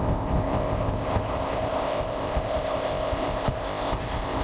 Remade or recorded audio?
remade